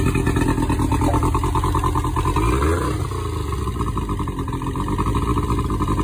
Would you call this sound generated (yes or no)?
no